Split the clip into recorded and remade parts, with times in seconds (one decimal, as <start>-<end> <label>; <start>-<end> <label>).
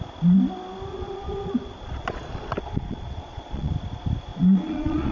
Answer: 0.0-0.9 recorded; 0.9-3.7 remade; 3.7-4.3 recorded; 4.3-5.1 remade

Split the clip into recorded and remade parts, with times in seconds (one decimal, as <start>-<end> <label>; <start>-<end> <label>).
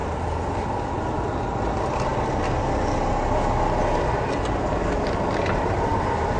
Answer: 0.0-6.4 recorded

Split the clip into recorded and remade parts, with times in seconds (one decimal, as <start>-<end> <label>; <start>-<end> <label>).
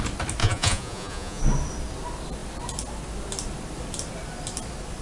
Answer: 0.0-0.4 recorded; 0.4-1.4 remade; 1.4-5.0 recorded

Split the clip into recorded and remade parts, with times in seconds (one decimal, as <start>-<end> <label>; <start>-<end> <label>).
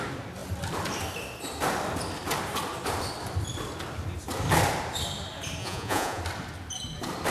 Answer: 0.0-5.6 recorded; 5.6-6.2 remade; 6.2-7.3 recorded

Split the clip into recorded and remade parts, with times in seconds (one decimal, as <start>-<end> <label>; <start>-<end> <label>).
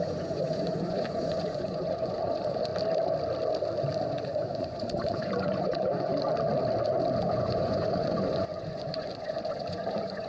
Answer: 0.0-2.7 remade; 2.7-4.1 recorded; 4.1-6.1 remade; 6.1-7.2 recorded; 7.2-10.3 remade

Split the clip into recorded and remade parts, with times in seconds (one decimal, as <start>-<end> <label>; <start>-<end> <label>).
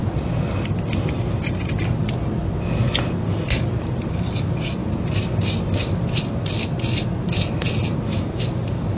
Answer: 0.0-9.0 recorded